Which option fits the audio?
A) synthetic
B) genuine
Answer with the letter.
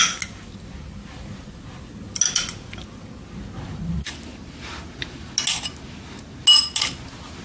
B